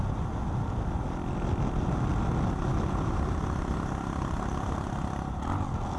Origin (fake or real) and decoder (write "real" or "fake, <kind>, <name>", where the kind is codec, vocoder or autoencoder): real